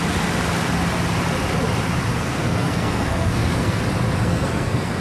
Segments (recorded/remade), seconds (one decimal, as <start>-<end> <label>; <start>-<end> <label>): 0.0-2.1 recorded; 2.1-3.8 remade; 3.8-4.2 recorded; 4.2-5.0 remade